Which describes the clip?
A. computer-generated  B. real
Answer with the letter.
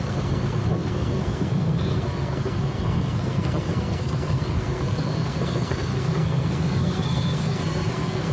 A